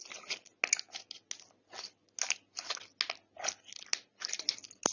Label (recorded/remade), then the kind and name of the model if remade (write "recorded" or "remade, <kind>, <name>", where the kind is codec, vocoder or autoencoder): recorded